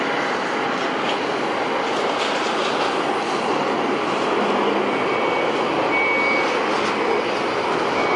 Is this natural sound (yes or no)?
yes